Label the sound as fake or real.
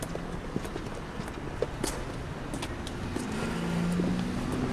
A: real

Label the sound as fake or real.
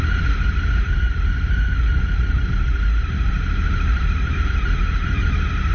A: real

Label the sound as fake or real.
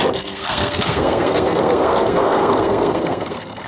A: fake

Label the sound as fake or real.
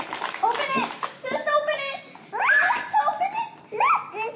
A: real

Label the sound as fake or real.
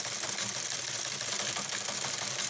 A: real